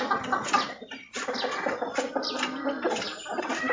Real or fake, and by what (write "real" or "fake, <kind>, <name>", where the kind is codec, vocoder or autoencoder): real